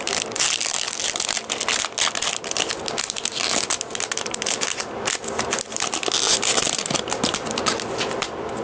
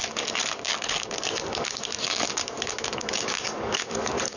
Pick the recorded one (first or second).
first